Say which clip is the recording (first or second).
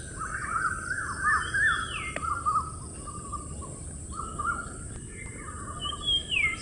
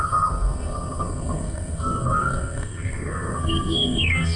first